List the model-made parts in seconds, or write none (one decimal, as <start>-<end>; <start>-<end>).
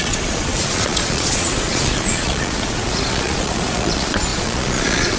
0.0-5.2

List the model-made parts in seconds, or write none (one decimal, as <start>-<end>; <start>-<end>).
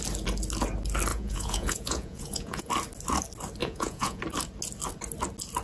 1.1-2.7; 3.6-4.2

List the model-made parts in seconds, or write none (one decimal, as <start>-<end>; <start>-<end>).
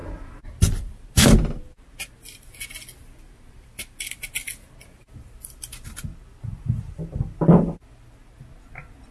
none